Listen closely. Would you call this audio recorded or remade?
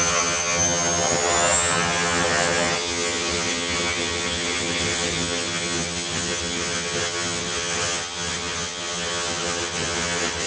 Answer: remade